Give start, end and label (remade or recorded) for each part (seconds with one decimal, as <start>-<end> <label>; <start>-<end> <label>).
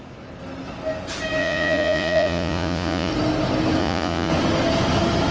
0.0-1.4 recorded; 1.4-3.1 remade; 3.1-3.8 recorded; 3.8-4.3 remade; 4.3-5.3 recorded